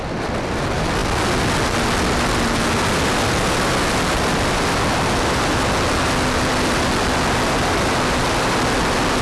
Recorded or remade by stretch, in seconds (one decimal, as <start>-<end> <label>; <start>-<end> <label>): 0.0-9.2 recorded